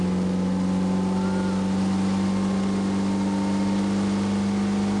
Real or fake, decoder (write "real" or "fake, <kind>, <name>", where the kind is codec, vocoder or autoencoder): real